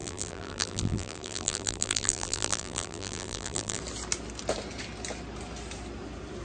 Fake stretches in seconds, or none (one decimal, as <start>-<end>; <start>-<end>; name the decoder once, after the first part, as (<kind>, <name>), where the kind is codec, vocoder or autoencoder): 0.0-3.8 (vocoder, BigVGAN v2)